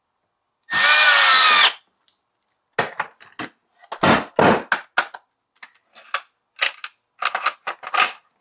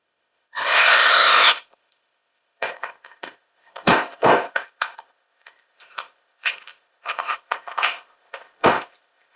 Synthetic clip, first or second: second